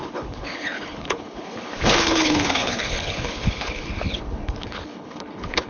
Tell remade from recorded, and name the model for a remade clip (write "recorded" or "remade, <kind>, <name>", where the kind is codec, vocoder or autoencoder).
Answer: remade, codec, HILCodec